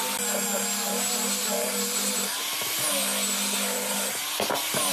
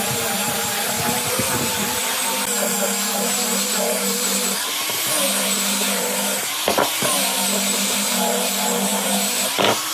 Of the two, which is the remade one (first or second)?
second